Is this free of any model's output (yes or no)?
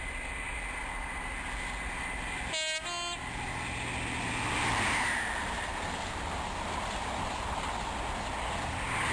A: yes